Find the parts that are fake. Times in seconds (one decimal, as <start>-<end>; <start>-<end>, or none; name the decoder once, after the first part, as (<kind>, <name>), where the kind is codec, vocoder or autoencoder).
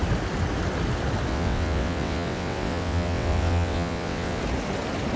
1.3-4.4 (vocoder, WaveNeXt)